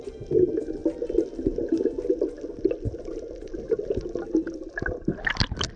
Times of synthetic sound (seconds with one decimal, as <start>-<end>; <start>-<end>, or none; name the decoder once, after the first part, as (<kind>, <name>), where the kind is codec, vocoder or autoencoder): none